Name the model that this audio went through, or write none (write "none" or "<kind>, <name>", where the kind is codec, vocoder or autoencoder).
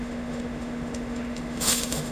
autoencoder, DAC-VAE